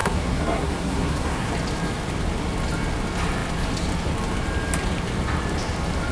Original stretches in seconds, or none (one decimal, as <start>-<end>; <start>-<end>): 1.5-6.1